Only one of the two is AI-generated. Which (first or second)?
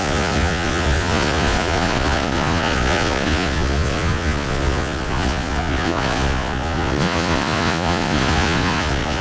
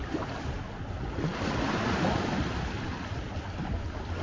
first